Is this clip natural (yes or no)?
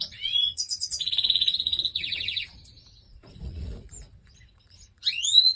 no